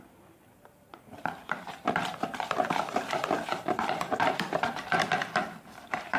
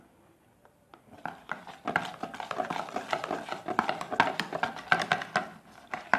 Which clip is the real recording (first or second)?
second